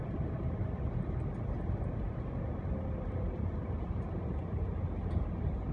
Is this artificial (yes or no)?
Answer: no